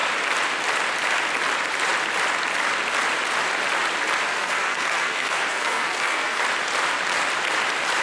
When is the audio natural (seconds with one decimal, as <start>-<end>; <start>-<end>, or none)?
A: 0.0-4.3; 6.4-8.0